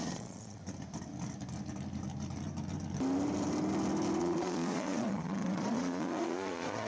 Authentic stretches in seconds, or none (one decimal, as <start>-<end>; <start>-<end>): 0.6-4.2